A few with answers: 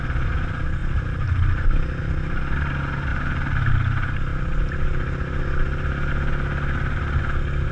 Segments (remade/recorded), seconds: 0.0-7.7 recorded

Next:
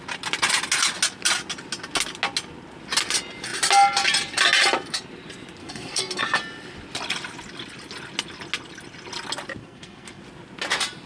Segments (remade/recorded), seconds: 0.0-5.6 recorded; 5.6-6.2 remade; 6.2-9.6 recorded; 9.6-10.2 remade; 10.2-11.1 recorded